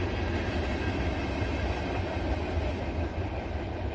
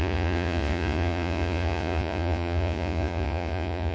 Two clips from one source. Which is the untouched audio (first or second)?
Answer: first